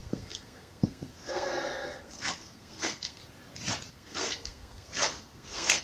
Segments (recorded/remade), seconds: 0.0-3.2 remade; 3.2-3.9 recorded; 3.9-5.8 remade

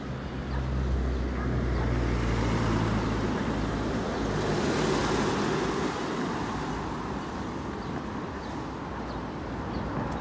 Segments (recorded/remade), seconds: 0.0-10.2 recorded

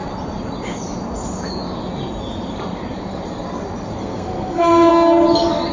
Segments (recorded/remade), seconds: 0.0-4.0 recorded; 4.0-4.9 remade; 4.9-5.7 recorded

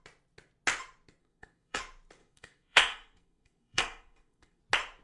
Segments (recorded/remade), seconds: 0.0-1.2 recorded; 1.2-1.8 remade; 1.8-2.2 recorded; 2.2-4.6 remade; 4.6-5.0 recorded

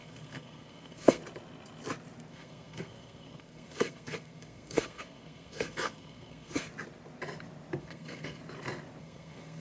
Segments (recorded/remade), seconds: 0.0-1.2 remade; 1.2-2.3 recorded; 2.3-6.7 remade; 6.7-7.8 recorded; 7.8-8.4 remade; 8.4-9.0 recorded; 9.0-9.6 remade

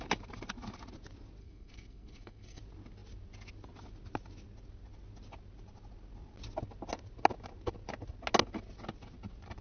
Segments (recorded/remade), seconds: 0.0-1.4 recorded; 1.4-2.6 remade; 2.6-9.6 recorded